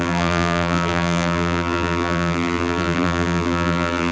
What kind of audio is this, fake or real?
fake